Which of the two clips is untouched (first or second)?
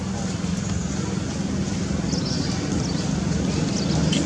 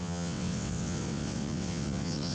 first